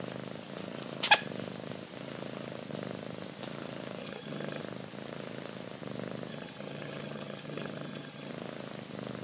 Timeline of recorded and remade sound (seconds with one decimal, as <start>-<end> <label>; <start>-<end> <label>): 0.0-4.0 recorded; 4.0-4.6 remade; 4.6-6.3 recorded; 6.3-8.3 remade; 8.3-9.2 recorded